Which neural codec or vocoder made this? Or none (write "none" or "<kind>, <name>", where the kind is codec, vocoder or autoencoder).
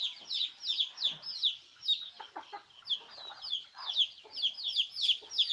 none